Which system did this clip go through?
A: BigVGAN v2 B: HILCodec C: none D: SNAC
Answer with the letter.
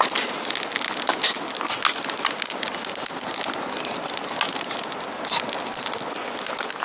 C